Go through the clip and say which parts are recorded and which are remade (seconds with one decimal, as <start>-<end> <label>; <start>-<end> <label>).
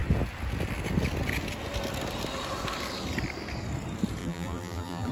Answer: 0.0-4.2 recorded; 4.2-5.1 remade